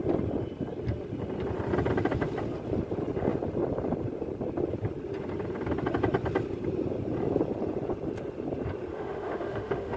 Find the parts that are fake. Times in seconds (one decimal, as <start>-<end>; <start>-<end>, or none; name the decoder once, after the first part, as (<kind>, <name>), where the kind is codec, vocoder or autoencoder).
8.9-10.0 (autoencoder, DAC-VAE)